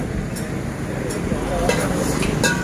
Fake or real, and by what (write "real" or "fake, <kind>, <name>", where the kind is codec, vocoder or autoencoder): real